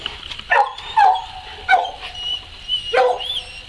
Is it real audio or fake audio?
real